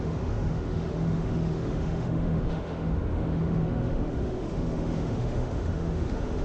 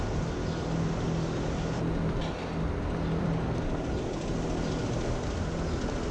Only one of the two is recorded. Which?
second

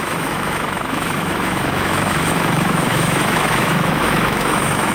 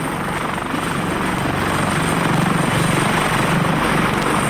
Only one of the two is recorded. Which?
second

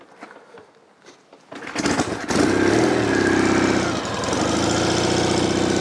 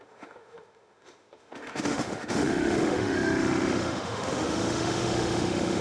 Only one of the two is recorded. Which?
first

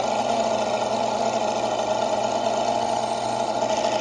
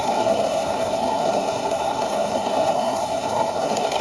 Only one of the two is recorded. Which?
first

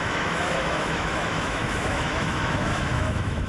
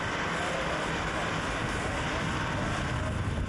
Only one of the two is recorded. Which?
second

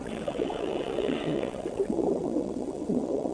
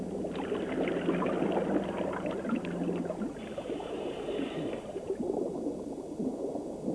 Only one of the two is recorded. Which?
second